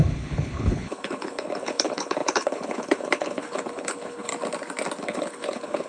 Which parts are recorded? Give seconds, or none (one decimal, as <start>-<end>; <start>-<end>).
4.3-5.0